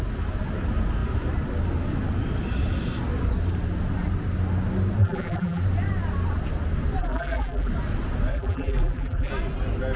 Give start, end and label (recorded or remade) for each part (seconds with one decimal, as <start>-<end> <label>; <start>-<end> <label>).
0.0-5.0 recorded; 5.0-5.6 remade; 5.6-7.0 recorded; 7.0-7.7 remade; 7.7-8.3 recorded; 8.3-9.3 remade; 9.3-10.0 recorded